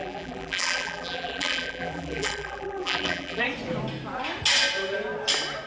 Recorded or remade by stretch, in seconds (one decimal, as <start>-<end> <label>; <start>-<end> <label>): 0.0-3.4 remade; 3.4-5.7 recorded